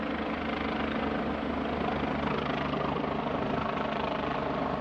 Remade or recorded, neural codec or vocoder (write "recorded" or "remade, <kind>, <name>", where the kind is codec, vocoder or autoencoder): recorded